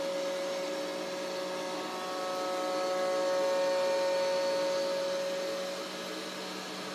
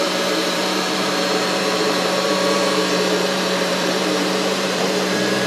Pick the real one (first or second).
first